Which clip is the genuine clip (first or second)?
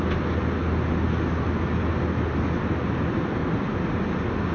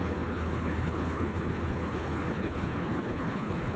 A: first